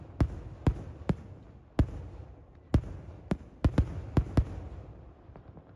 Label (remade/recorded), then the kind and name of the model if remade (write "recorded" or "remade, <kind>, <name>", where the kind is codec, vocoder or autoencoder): recorded